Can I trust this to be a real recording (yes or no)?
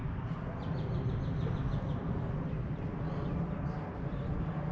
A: yes